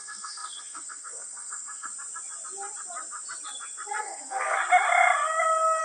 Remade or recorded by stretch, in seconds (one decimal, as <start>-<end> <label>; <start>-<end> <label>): 0.0-1.9 remade; 1.9-4.0 recorded; 4.0-4.6 remade; 4.6-5.8 recorded